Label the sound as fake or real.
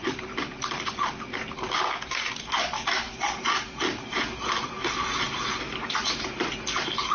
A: real